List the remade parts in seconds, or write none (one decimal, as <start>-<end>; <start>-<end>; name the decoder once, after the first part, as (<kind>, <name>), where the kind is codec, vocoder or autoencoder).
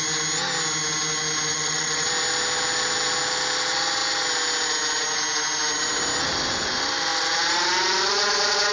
1.5-2.1 (vocoder, WaveNeXt)